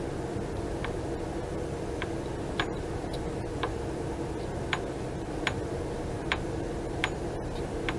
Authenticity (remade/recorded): recorded